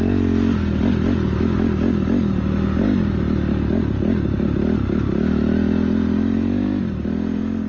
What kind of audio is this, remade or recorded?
recorded